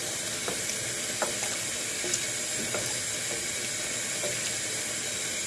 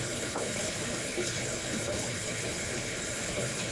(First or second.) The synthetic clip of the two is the second